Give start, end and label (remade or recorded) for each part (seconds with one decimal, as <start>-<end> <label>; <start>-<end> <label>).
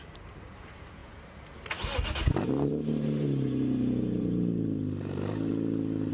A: 0.0-1.0 remade; 1.0-2.7 recorded; 2.7-5.5 remade; 5.5-6.1 recorded